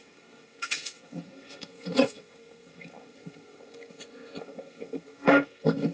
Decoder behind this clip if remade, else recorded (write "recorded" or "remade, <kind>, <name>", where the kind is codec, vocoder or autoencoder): remade, codec, SNAC